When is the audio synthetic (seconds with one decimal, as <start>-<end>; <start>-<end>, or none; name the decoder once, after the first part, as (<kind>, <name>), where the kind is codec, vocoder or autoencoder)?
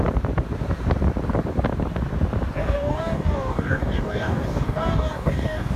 2.6-5.8 (codec, DAC)